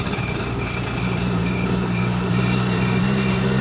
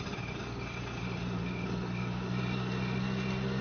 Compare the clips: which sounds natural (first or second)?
second